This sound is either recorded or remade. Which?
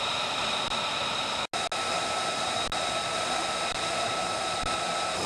recorded